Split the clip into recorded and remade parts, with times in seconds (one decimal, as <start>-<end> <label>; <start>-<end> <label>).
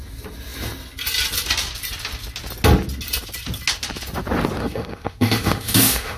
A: 0.0-4.6 recorded; 4.6-6.2 remade